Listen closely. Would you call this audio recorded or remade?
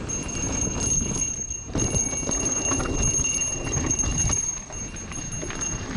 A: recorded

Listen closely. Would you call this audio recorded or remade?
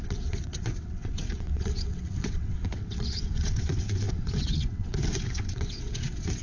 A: remade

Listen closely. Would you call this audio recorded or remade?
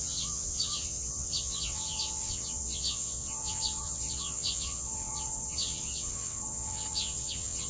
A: remade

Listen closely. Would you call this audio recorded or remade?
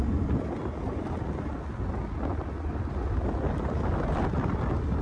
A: recorded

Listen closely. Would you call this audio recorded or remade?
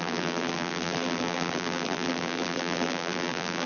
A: remade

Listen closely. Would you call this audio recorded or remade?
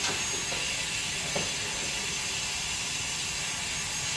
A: recorded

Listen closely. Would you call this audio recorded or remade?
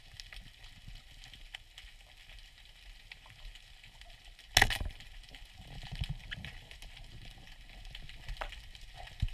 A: recorded